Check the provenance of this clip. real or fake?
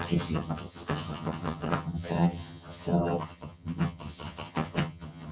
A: fake